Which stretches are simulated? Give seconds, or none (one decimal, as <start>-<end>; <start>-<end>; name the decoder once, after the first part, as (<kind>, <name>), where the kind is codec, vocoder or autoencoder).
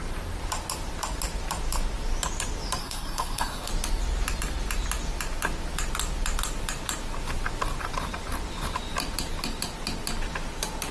2.8-3.7 (codec, SNAC)